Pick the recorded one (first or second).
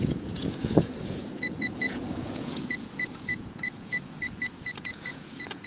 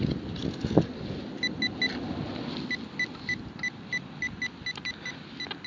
second